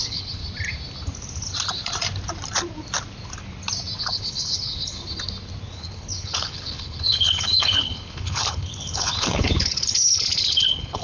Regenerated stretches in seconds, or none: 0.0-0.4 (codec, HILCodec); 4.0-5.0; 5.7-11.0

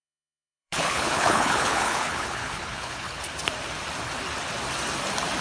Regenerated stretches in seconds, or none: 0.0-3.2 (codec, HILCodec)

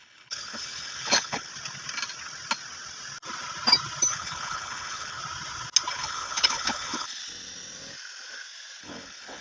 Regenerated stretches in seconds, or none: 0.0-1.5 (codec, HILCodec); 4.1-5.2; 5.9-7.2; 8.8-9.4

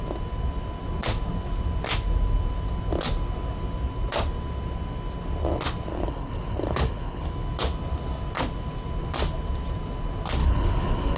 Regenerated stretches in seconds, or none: 5.9-7.3 (codec, HILCodec); 10.4-11.2

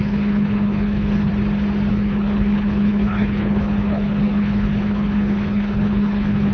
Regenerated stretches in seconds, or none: 0.0-1.3 (codec, HILCodec); 1.9-6.5